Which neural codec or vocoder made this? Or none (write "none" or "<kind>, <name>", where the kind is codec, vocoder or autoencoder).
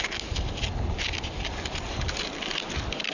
none